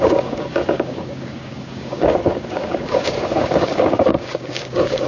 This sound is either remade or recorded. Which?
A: remade